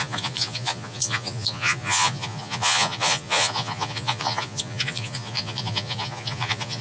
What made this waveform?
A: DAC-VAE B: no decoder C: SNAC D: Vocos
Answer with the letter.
D